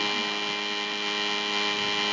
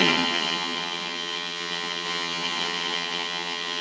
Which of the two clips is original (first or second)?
first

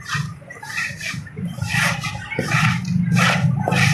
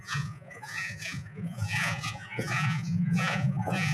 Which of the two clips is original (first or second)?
first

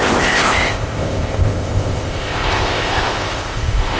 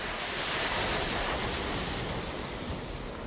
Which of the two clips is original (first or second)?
second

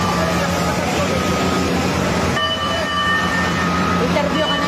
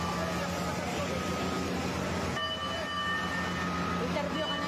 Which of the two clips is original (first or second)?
second